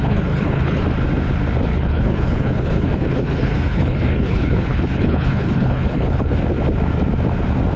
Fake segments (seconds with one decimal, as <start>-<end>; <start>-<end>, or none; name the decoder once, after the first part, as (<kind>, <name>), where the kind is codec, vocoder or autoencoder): 0.0-0.8 (codec, HILCodec); 1.7-6.4